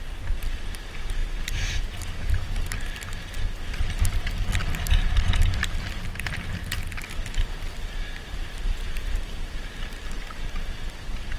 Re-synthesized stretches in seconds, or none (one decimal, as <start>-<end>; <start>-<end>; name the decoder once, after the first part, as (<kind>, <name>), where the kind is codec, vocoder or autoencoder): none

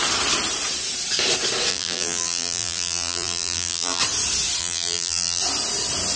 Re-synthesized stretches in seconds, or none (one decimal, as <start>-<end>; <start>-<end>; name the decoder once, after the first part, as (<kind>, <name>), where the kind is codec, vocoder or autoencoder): 1.7-4.0 (vocoder, BigVGAN v2); 4.6-5.4

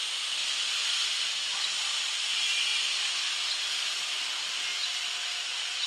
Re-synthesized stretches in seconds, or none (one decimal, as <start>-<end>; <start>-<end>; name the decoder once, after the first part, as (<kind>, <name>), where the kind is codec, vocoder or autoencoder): none

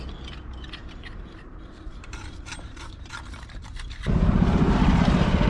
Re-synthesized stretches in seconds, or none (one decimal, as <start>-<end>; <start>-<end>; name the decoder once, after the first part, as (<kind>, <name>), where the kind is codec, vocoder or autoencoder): 0.8-3.1 (vocoder, BigVGAN v2); 3.7-5.5

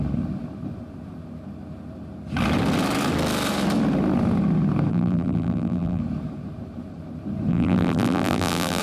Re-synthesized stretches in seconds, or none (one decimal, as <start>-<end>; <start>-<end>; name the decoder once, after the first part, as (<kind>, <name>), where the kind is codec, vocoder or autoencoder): 4.9-6.0 (vocoder, BigVGAN v2); 7.5-8.8